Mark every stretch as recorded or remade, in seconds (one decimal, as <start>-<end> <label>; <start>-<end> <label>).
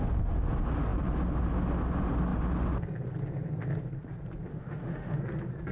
0.0-4.5 recorded; 4.5-5.2 remade; 5.2-5.7 recorded